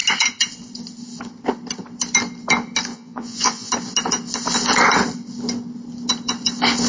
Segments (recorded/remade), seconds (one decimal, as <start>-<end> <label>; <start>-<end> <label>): 0.0-2.9 recorded; 2.9-3.7 remade; 3.7-6.9 recorded